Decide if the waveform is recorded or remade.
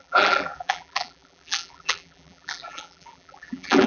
remade